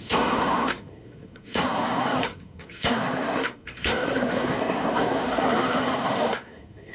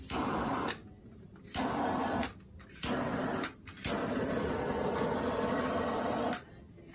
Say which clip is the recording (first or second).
second